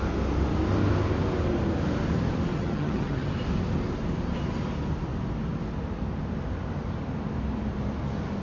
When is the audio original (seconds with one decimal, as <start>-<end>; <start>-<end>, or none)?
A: 0.0-2.5; 3.3-8.4